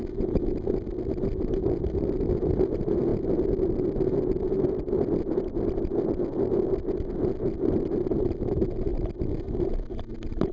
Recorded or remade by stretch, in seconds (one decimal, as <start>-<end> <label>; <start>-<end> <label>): 0.0-10.5 recorded